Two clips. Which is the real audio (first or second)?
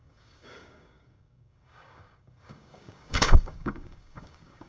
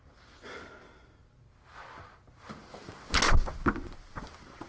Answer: second